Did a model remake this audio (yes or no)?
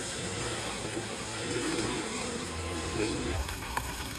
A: yes